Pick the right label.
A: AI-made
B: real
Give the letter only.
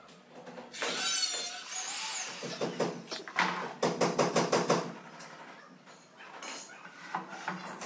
B